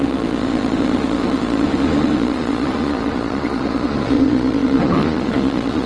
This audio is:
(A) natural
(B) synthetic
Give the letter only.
B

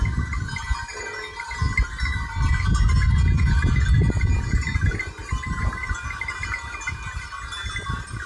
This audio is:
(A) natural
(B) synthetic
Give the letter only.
A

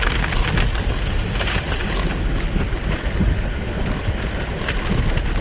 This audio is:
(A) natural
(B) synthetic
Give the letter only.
A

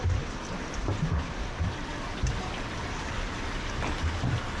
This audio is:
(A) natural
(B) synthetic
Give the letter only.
A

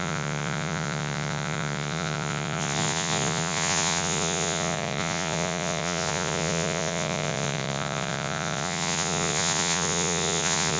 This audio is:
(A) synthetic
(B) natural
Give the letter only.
A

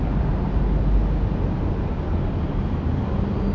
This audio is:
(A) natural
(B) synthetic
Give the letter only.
A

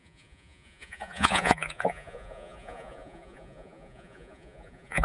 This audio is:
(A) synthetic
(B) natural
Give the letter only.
A